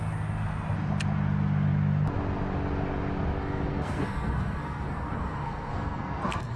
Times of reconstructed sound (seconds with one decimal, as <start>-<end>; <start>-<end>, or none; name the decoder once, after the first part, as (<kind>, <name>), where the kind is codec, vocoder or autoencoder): 3.4-6.6 (codec, SNAC)